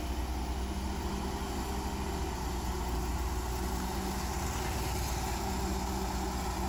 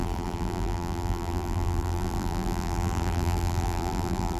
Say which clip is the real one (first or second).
first